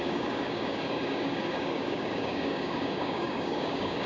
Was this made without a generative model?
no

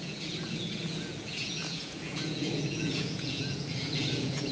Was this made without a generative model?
no